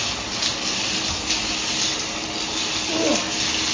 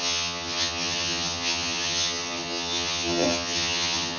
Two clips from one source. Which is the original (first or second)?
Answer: first